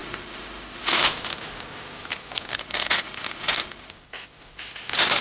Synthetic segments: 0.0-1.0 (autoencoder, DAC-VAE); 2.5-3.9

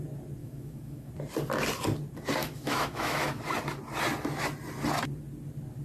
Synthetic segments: 0.4-1.1 (autoencoder, DAC-VAE); 2.4-3.4

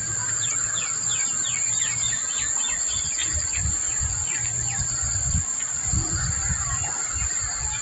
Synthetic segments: 3.2-3.8 (vocoder, BigVGAN v2); 5.5-7.3

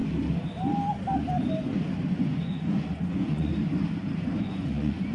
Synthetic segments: 2.1-3.5 (vocoder, Vocos); 4.4-5.1

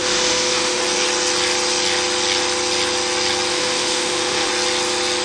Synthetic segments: 0.0-0.8 (autoencoder, DAC-VAE); 3.5-4.5